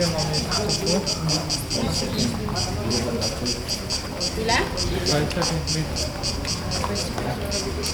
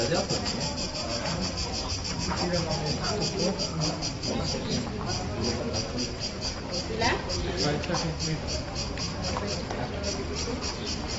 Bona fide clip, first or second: first